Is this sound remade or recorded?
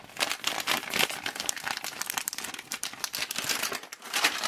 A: recorded